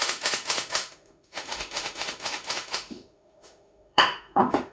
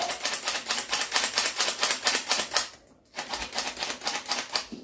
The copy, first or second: first